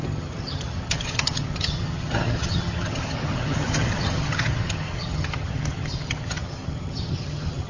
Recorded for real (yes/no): no